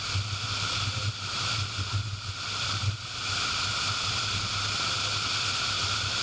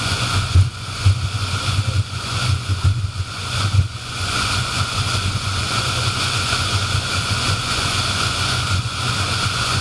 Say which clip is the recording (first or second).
first